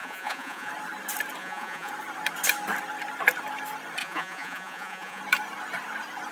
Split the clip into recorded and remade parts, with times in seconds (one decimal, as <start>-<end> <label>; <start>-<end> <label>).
0.0-0.7 remade; 0.7-1.4 recorded; 1.4-1.9 remade; 1.9-4.0 recorded; 4.0-5.2 remade; 5.2-6.3 recorded